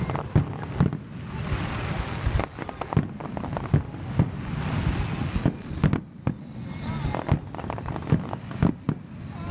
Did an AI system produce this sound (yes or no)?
no